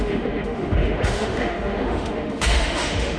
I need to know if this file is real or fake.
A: fake